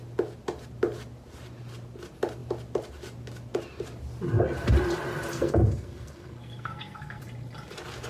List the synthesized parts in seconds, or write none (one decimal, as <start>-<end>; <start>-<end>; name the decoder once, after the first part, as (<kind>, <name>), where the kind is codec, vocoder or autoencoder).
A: 5.3-7.2 (codec, SNAC)

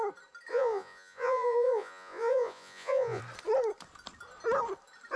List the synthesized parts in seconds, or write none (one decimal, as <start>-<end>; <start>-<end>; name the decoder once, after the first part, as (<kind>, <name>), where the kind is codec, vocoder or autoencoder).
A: 0.5-3.2 (vocoder, Vocos)